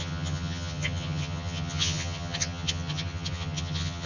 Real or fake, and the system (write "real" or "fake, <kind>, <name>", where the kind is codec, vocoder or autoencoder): fake, vocoder, HiFi-GAN